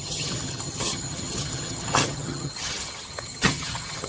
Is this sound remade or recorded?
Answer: remade